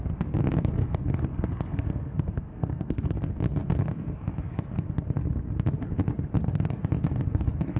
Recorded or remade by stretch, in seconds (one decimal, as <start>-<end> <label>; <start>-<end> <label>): 0.0-0.8 recorded; 0.8-3.2 remade; 3.2-7.8 recorded